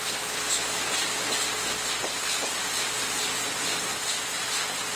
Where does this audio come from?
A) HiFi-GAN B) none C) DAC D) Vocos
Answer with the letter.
B